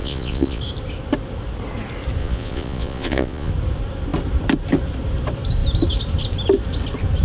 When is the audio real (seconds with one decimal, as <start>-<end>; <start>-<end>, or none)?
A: 0.6-2.2; 3.5-7.2